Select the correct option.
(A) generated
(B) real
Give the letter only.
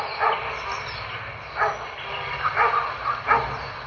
B